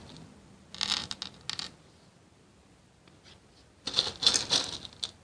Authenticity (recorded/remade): recorded